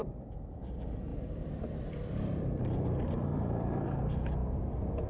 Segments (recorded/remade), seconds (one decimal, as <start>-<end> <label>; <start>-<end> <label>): 0.0-0.6 remade; 0.6-1.1 recorded; 1.1-4.0 remade; 4.0-5.1 recorded